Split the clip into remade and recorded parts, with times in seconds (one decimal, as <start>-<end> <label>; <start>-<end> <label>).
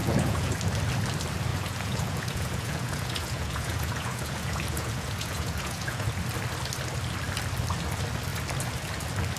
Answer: 0.0-0.5 remade; 0.5-1.5 recorded; 1.5-6.1 remade; 6.1-9.4 recorded